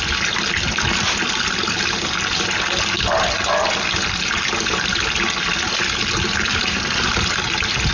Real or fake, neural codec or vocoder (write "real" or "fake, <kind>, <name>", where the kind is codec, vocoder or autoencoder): real